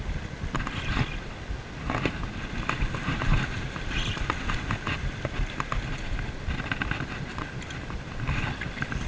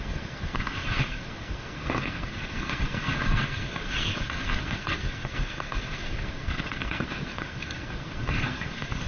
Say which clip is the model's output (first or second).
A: second